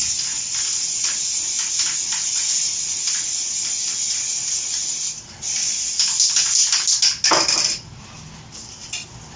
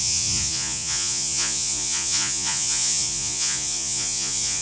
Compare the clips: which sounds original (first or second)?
first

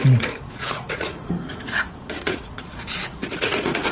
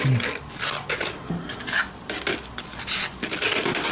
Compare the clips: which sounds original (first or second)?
second